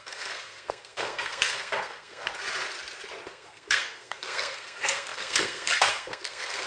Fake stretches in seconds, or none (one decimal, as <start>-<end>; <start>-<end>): 0.0-2.3; 3.3-6.7